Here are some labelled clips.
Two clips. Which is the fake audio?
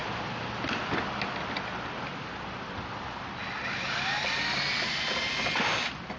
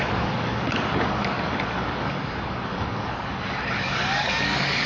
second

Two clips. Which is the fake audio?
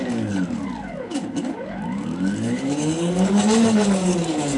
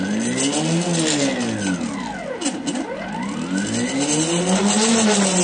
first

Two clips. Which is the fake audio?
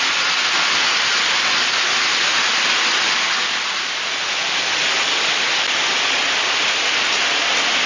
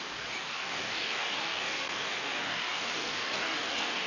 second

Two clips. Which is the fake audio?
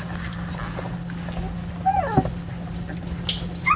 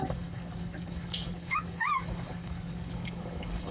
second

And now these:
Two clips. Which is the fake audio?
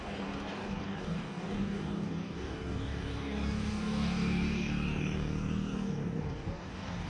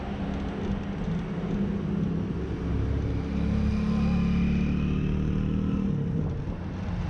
first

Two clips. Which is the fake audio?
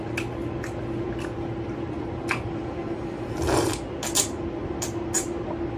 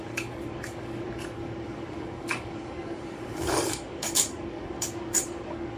second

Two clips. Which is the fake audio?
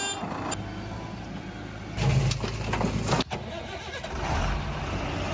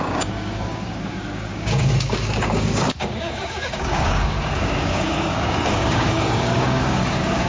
second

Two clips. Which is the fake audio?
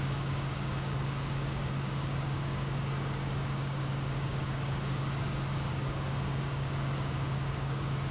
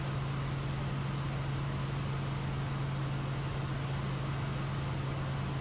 first